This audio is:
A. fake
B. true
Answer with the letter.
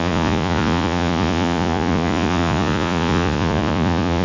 A